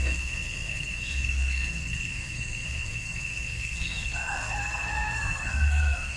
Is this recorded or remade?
remade